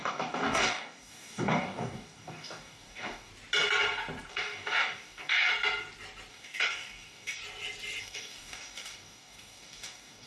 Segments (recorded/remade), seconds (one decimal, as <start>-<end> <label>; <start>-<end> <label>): 0.0-3.3 remade; 3.3-4.3 recorded; 4.3-5.5 remade; 5.5-6.3 recorded; 6.3-7.4 remade; 7.4-8.0 recorded; 8.0-10.3 remade